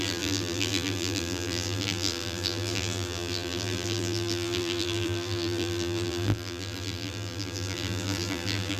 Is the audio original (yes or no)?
no